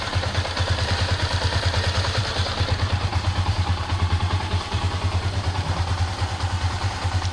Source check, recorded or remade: remade